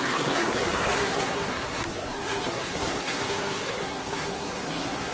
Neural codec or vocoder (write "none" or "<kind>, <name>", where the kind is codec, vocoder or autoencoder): codec, SNAC